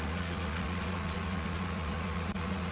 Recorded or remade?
remade